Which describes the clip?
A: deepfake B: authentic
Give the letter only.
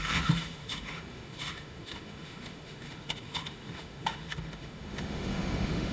A